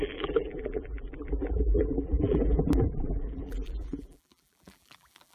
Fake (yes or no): yes